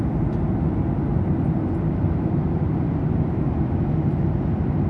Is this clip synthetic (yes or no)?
no